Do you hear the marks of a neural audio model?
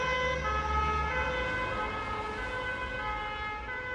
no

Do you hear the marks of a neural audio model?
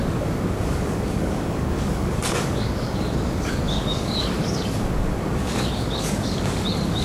yes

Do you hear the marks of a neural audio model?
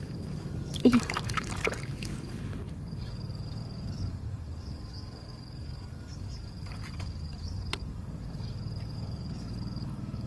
yes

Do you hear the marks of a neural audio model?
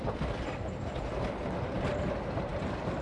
no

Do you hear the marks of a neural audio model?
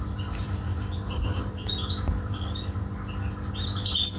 no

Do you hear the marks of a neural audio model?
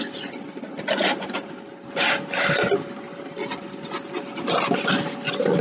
no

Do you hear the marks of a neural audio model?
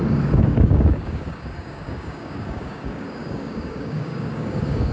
yes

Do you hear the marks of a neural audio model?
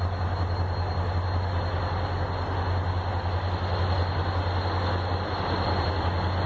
no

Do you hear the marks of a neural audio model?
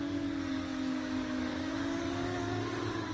yes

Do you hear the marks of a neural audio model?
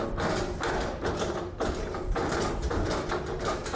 no